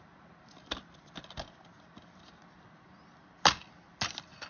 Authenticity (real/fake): real